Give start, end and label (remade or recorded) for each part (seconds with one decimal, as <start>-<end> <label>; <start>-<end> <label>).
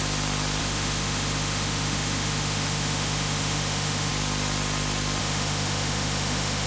0.0-0.6 recorded; 0.6-4.1 remade; 4.1-5.2 recorded; 5.2-6.7 remade